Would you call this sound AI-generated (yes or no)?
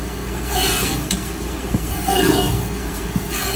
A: yes